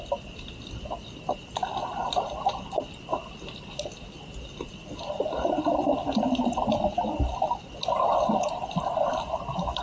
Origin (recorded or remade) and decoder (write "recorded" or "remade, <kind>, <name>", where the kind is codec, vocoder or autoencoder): recorded